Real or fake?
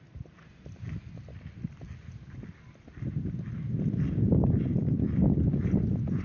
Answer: real